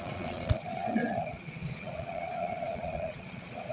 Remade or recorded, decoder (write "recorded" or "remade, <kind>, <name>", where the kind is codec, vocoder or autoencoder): remade, vocoder, Vocos